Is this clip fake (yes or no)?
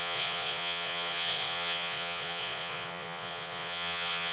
yes